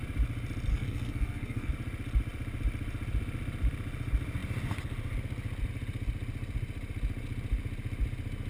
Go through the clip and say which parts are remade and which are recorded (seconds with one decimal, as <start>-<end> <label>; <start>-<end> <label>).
0.0-0.7 recorded; 0.7-1.7 remade; 1.7-8.5 recorded